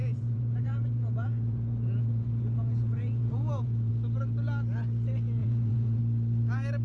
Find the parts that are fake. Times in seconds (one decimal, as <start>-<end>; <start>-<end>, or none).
0.0-3.9; 5.4-6.0